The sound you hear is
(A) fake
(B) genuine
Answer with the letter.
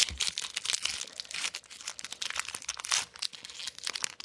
B